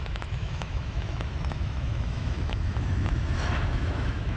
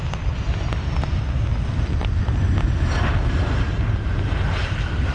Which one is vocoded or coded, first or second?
first